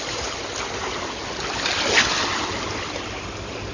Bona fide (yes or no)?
yes